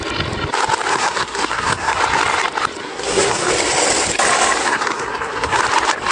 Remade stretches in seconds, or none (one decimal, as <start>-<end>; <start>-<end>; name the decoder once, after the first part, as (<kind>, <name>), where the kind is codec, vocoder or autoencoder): 0.9-2.0 (codec, SNAC); 2.8-3.5; 4.6-5.6